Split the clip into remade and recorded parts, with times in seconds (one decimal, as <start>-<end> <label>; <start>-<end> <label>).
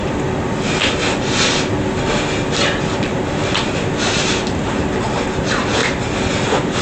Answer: 0.0-3.4 recorded; 3.4-4.9 remade; 4.9-6.8 recorded